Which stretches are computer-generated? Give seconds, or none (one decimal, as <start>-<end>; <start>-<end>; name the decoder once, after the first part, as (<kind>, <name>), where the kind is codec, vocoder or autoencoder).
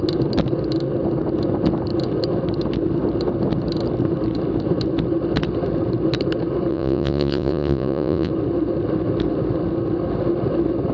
6.7-8.3 (vocoder, Vocos)